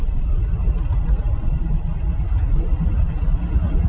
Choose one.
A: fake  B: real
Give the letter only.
B